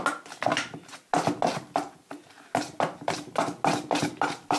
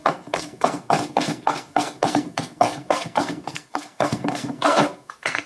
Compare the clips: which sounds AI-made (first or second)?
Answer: second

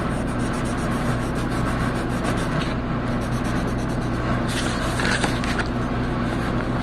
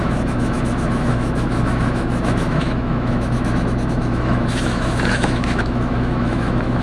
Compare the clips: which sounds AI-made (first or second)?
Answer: second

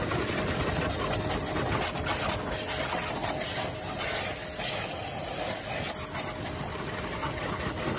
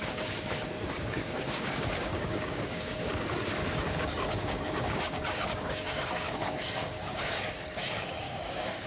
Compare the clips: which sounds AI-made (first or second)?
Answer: second